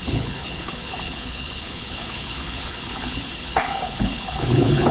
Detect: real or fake fake